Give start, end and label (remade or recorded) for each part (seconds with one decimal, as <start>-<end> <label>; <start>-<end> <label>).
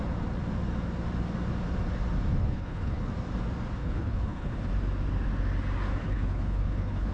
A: 0.0-2.4 recorded; 2.4-3.1 remade; 3.1-3.8 recorded; 3.8-4.7 remade; 4.7-6.0 recorded; 6.0-7.1 remade